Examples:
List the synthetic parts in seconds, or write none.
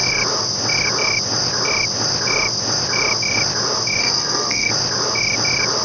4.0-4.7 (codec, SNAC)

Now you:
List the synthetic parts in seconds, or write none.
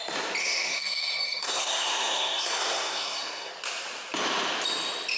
0.4-3.5 (codec, SNAC)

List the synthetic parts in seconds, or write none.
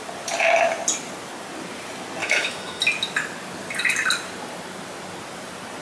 2.2-2.8 (autoencoder, DAC-VAE)